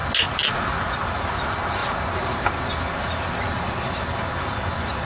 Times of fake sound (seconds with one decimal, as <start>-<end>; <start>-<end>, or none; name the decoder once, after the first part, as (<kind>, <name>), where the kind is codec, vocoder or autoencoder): none